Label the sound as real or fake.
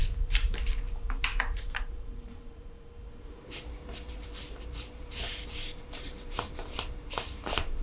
fake